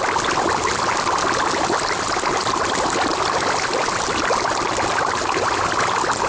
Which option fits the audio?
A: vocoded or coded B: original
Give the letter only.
B